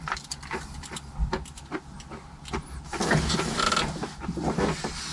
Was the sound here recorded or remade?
recorded